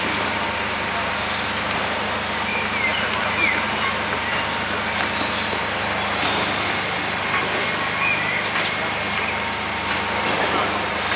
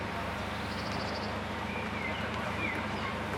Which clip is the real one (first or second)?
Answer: first